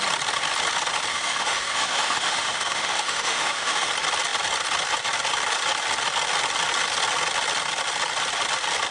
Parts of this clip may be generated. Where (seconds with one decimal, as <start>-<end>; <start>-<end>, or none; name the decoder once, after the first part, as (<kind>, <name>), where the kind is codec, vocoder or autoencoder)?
1.1-3.9 (autoencoder, DAC-VAE)